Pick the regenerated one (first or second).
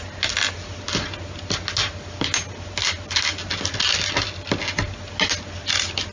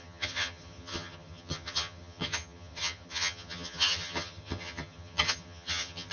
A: second